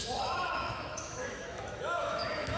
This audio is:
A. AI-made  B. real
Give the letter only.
A